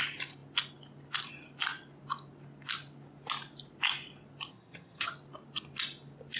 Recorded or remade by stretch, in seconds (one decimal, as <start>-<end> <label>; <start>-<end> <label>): 0.0-4.5 recorded; 4.5-5.1 remade; 5.1-6.4 recorded